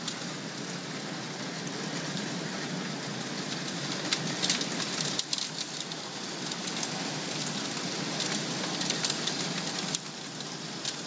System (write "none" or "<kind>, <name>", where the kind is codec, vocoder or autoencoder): none